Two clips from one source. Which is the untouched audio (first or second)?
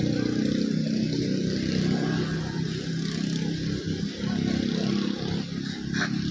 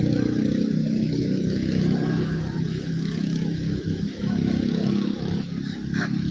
first